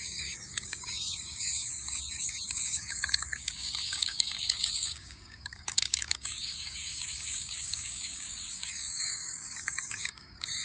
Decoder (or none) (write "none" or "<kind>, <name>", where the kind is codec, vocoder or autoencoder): codec, DAC